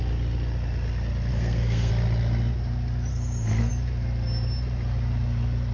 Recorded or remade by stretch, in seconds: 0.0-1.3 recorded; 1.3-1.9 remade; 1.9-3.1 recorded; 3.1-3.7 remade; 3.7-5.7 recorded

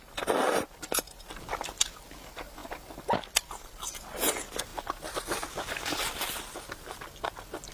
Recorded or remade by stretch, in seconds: 0.0-7.7 recorded

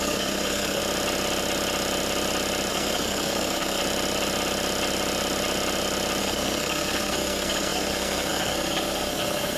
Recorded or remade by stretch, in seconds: 0.0-0.8 remade; 0.8-2.7 recorded; 2.7-3.8 remade; 3.8-6.2 recorded; 6.2-9.6 remade